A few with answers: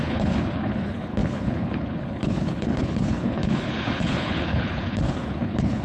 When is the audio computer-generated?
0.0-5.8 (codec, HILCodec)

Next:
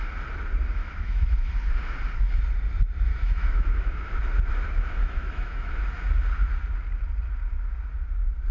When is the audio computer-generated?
0.8-1.5 (autoencoder, DAC-VAE); 3.1-4.2; 5.0-5.7

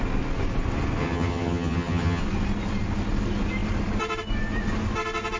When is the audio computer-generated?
1.0-2.2 (vocoder, HiFi-GAN)

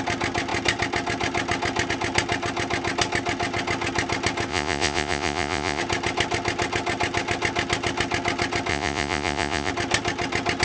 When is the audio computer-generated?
4.5-5.8 (vocoder, Vocos); 8.7-9.7

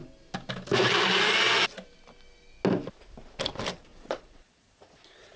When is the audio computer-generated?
3.9-5.4 (vocoder, Vocos)